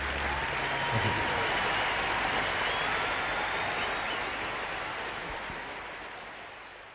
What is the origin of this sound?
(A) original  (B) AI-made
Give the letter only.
A